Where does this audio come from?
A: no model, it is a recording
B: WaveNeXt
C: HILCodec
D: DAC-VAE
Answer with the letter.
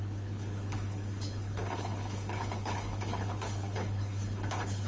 C